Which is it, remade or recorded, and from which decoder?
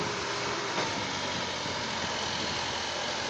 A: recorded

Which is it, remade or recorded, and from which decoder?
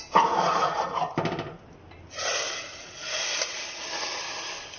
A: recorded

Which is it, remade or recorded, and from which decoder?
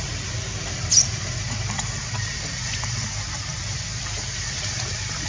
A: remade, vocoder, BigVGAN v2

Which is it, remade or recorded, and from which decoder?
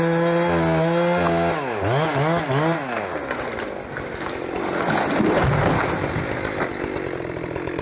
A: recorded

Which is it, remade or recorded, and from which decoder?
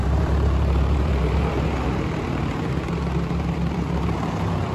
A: remade, vocoder, BigVGAN v2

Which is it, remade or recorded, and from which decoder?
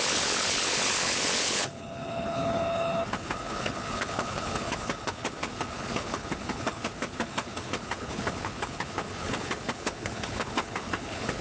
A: remade, codec, HILCodec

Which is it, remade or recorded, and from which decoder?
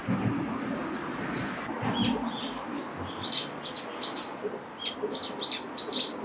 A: recorded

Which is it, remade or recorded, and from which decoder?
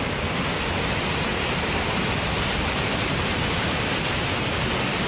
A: recorded